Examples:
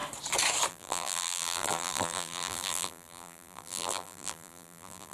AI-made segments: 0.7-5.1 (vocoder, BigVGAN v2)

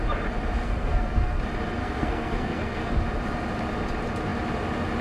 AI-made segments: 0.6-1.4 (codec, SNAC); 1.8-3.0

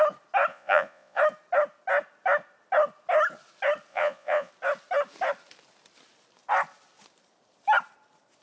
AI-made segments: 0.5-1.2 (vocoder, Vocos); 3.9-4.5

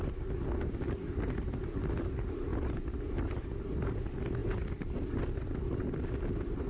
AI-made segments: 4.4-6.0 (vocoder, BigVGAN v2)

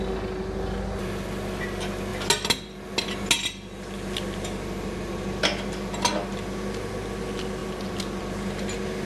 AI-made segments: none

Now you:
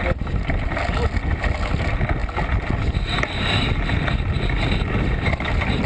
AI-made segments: none

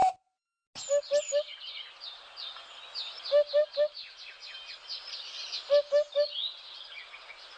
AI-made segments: none

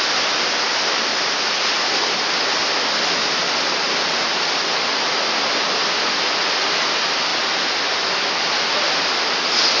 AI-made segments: 1.1-1.6 (vocoder, Vocos)